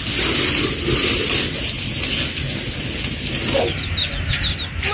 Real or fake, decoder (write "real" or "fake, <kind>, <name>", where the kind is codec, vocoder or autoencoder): real